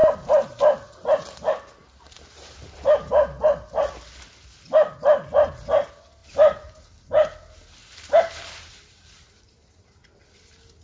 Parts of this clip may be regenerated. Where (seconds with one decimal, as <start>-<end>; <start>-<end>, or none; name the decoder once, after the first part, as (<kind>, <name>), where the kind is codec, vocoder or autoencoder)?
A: 0.0-0.6 (vocoder, BigVGAN v2); 1.8-3.1; 7.8-10.0